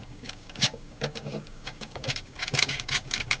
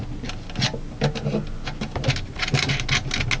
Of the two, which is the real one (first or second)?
second